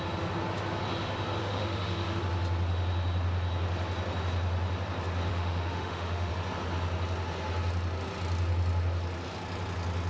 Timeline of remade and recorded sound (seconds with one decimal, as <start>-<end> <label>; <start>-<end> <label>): 0.0-1.4 recorded; 1.4-2.2 remade; 2.2-5.3 recorded; 5.3-6.3 remade; 6.3-10.1 recorded